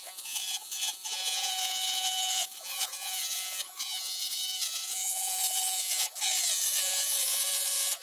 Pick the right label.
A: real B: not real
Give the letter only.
B